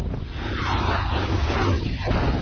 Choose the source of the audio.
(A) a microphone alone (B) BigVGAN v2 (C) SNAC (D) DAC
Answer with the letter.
A